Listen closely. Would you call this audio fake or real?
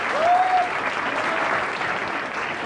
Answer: real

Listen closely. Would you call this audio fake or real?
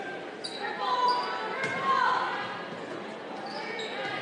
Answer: real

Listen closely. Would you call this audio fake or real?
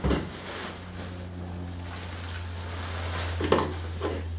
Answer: real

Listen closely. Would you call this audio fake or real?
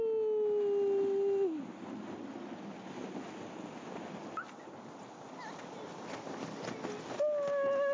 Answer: real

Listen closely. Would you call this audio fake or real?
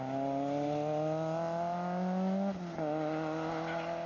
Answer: real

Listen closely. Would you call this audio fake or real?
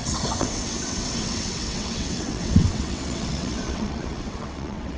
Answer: fake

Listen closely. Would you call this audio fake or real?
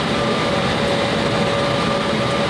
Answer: real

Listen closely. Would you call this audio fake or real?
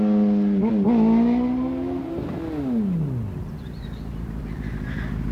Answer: real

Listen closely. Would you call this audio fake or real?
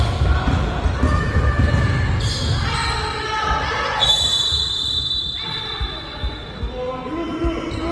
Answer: real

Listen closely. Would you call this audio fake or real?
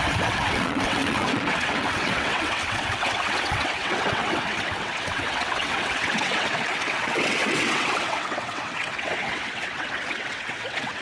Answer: fake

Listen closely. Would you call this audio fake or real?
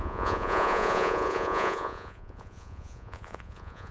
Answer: fake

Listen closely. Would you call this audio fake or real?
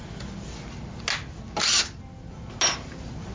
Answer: real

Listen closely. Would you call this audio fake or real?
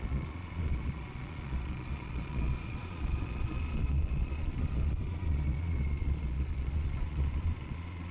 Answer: fake